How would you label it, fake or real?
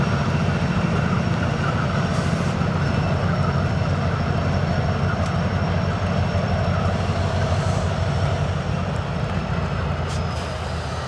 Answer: real